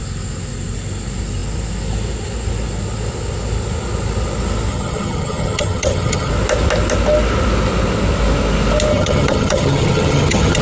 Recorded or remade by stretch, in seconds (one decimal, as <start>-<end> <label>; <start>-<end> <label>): 0.0-4.7 recorded; 4.7-6.3 remade; 6.3-8.9 recorded; 8.9-10.6 remade